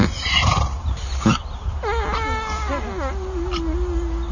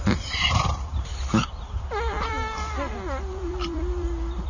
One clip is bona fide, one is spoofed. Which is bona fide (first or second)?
first